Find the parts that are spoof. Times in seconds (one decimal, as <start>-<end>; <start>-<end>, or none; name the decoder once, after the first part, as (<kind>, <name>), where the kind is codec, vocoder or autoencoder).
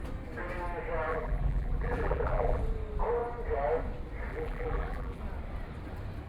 1.1-2.6 (vocoder, BigVGAN v2); 4.3-5.2